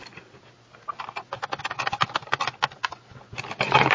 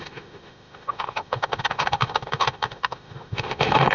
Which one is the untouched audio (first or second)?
first